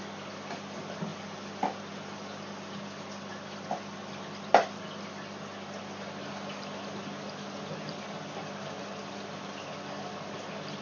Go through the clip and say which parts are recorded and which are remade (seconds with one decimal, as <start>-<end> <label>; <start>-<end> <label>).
0.0-10.8 recorded